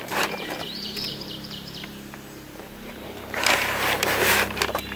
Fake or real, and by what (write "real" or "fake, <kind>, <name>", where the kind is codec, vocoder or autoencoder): fake, vocoder, BigVGAN v2